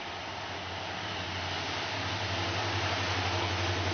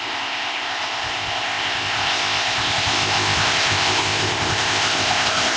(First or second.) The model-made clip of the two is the second